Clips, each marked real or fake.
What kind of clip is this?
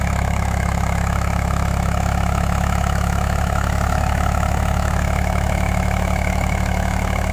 fake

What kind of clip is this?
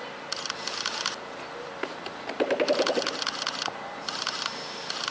real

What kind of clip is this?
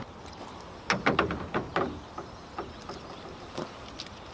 real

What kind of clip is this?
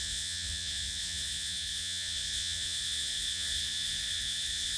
fake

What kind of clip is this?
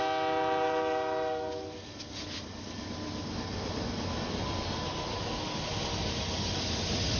real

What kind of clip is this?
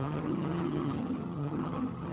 fake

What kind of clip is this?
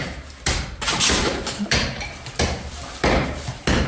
fake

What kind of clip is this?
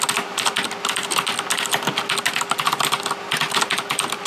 real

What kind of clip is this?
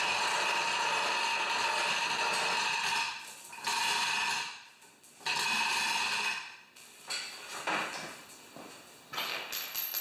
real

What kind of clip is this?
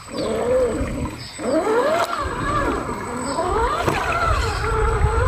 real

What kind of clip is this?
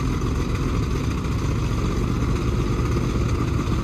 real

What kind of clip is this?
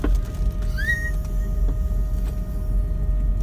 real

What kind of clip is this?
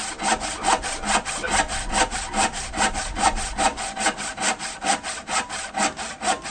real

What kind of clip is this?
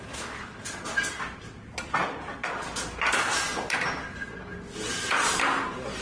real